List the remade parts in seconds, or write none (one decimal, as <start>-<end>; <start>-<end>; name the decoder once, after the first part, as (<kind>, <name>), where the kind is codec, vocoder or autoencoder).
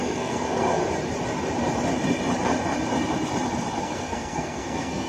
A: 0.0-0.8 (codec, SNAC); 3.8-5.1